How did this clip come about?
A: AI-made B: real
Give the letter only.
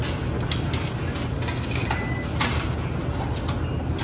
B